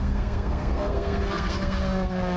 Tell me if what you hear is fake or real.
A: fake